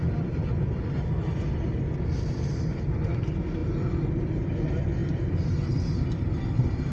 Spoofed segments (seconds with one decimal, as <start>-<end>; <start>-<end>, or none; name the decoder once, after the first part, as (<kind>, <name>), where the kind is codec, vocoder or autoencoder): none